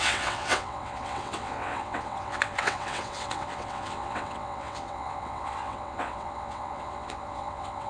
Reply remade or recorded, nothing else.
remade